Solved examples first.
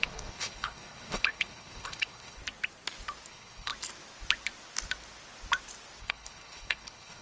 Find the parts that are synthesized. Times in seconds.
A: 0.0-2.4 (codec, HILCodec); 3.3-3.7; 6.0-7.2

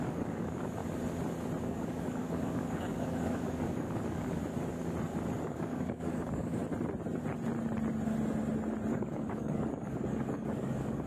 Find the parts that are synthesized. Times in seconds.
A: 0.0-0.8 (codec, DAC); 1.6-4.4; 5.4-6.6; 8.9-11.1

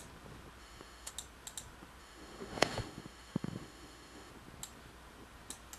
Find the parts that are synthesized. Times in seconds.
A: 0.6-1.1 (autoencoder, DAC-VAE); 2.0-4.3

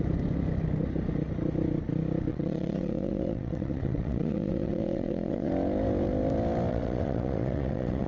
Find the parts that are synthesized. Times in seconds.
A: 2.3-5.5 (vocoder, WaveNeXt); 6.7-8.1

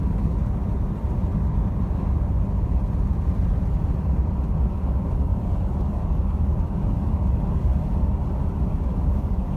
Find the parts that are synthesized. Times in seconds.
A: 0.0-0.6 (codec, DAC); 4.7-7.7; 8.7-9.6

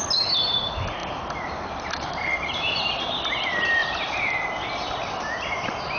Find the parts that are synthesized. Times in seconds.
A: 1.0-3.0 (vocoder, BigVGAN v2); 3.8-4.4

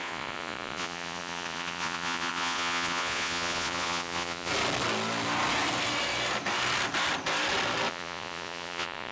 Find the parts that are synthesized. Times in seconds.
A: 0.0-4.5 (vocoder, Vocos); 7.9-9.1

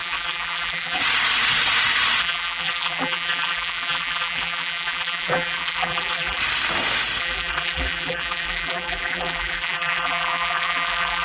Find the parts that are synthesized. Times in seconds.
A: 0.0-1.0 (vocoder, BigVGAN v2); 2.2-6.4; 7.2-11.2